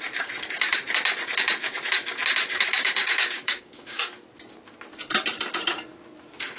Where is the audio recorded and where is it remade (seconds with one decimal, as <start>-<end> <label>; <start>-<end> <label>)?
0.0-2.7 recorded; 2.7-4.1 remade; 4.1-6.6 recorded